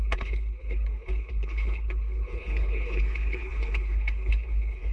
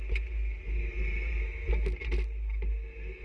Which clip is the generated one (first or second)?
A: first